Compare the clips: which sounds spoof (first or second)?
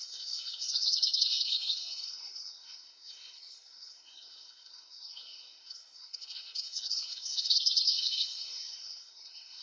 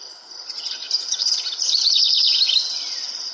first